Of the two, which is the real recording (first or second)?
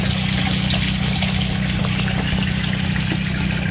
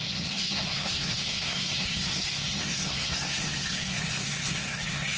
first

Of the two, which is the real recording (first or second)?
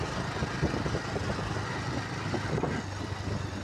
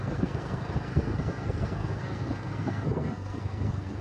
first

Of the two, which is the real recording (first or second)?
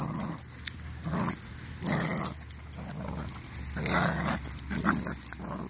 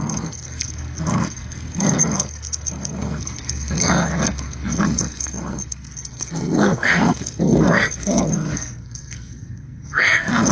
first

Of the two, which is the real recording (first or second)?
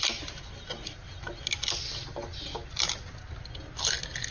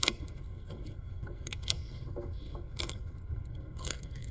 first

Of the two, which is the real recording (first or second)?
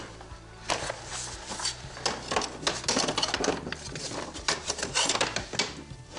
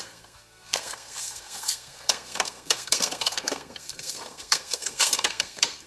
first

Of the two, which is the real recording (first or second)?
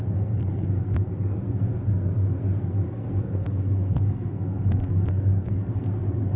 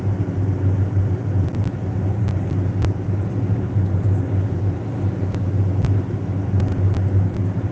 second